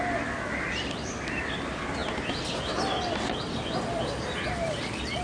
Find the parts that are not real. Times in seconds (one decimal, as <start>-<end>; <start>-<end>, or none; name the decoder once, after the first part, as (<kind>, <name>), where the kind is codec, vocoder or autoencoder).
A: none